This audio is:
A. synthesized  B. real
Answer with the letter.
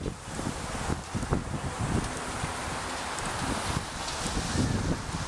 B